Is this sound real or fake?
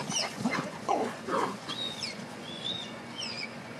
fake